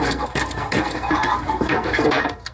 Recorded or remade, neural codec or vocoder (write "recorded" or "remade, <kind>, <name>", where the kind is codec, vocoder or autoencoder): remade, codec, SNAC